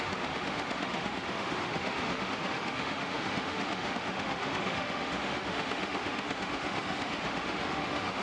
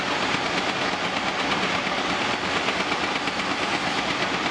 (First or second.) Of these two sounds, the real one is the second